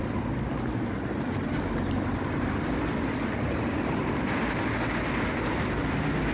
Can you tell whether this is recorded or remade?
recorded